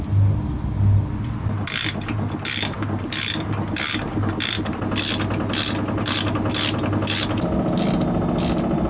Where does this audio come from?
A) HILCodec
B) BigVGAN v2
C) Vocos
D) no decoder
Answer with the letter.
D